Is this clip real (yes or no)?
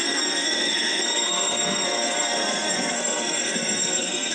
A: no